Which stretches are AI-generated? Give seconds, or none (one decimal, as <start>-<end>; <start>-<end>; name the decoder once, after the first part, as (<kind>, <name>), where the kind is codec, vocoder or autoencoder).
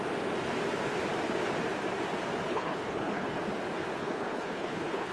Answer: 2.5-3.4 (codec, HILCodec); 4.0-5.1